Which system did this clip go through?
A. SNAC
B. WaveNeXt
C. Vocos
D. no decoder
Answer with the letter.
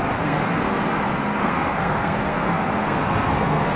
A